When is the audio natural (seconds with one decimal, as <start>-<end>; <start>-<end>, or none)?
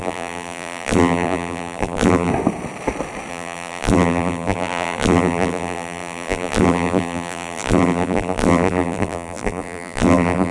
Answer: 2.3-3.3